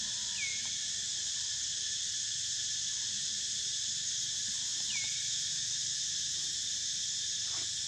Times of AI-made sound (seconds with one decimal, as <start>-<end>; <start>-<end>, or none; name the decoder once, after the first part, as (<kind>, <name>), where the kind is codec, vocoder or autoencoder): 0.5-4.2 (vocoder, BigVGAN v2); 4.7-7.0

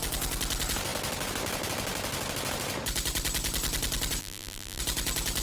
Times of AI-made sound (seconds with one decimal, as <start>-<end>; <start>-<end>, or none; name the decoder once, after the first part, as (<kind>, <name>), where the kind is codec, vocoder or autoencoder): 4.2-4.8 (vocoder, BigVGAN v2)

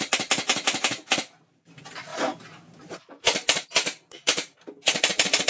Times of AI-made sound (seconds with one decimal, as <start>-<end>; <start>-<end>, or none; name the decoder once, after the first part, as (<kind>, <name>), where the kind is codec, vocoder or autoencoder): 2.1-5.5 (vocoder, BigVGAN v2)

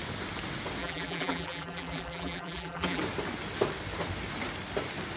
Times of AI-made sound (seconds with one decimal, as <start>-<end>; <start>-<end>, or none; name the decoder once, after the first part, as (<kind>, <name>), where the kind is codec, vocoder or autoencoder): 0.8-3.0 (vocoder, BigVGAN v2)